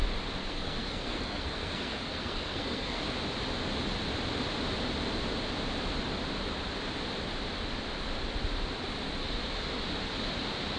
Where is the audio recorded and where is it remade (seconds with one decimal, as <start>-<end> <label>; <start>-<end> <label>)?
0.0-0.4 recorded; 0.4-3.0 remade; 3.0-10.8 recorded